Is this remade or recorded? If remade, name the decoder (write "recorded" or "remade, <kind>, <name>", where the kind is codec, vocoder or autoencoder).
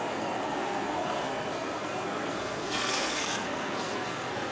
remade, codec, SNAC